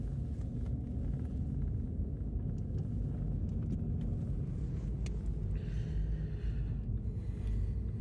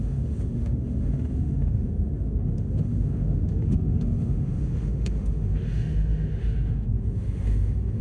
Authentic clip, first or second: first